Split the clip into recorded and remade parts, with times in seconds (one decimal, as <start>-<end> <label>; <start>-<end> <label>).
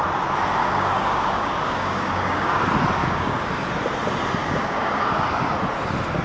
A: 0.0-0.6 recorded; 0.6-2.6 remade; 2.6-3.0 recorded; 3.0-3.5 remade; 3.5-4.4 recorded; 4.4-5.0 remade; 5.0-6.2 recorded